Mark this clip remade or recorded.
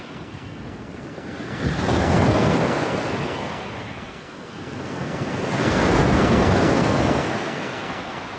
remade